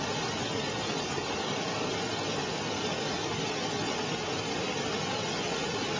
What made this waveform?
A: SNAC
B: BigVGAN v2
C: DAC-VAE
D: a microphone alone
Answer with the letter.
D